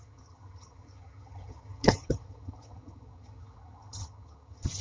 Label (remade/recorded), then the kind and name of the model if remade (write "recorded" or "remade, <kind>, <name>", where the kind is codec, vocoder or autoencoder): remade, vocoder, HiFi-GAN